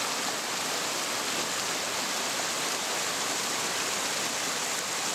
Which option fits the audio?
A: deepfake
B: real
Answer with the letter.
B